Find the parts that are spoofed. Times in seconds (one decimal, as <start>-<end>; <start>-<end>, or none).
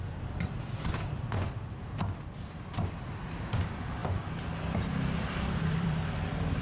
0.0-6.6